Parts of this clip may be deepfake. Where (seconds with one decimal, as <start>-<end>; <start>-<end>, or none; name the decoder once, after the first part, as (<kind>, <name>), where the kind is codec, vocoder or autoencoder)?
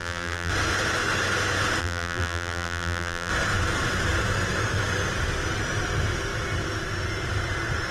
0.0-0.5 (vocoder, BigVGAN v2); 1.8-3.3